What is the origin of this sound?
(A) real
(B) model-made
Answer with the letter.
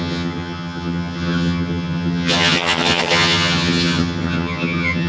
B